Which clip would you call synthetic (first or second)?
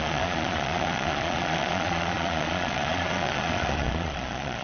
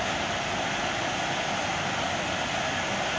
first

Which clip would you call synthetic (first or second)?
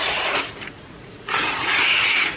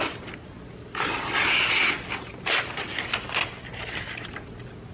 first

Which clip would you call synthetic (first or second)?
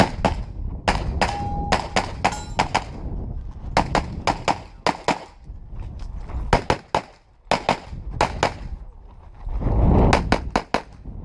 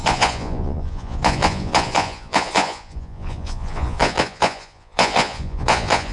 second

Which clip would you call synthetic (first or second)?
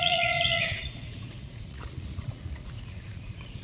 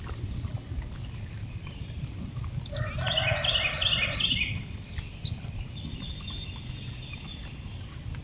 first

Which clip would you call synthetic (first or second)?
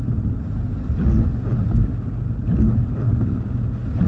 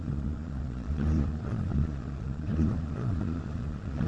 second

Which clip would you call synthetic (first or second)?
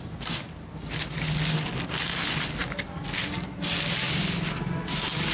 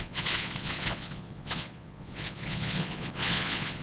second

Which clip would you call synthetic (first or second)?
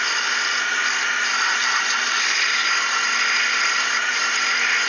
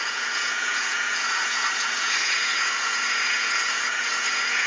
second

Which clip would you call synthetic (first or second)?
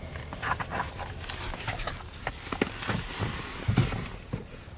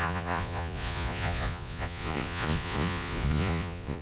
second